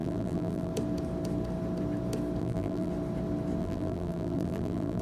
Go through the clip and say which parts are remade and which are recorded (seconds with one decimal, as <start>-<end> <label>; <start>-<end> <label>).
0.0-0.7 remade; 0.7-2.4 recorded; 2.4-2.9 remade; 2.9-3.6 recorded; 3.6-5.0 remade